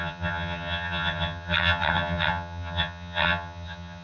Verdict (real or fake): fake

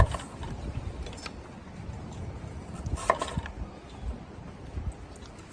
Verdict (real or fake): real